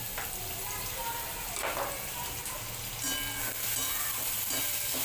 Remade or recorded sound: recorded